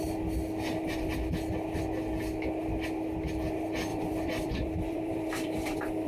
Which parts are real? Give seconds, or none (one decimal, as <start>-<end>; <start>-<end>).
0.0-3.9